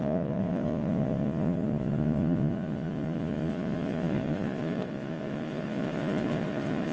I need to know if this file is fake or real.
fake